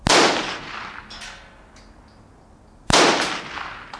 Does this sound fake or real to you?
real